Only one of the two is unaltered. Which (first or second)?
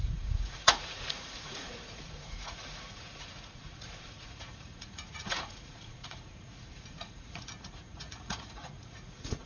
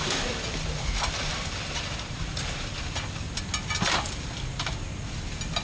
second